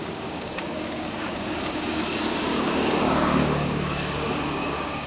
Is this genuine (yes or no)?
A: no